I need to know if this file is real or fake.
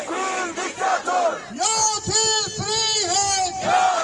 real